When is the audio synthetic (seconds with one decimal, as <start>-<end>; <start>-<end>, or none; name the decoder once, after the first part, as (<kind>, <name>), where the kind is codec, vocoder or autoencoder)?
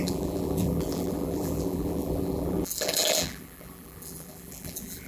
0.0-5.1 (vocoder, BigVGAN v2)